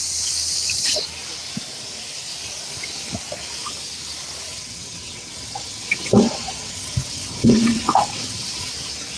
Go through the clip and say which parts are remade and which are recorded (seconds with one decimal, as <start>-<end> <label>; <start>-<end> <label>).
0.0-4.5 recorded; 4.5-8.7 remade; 8.7-9.2 recorded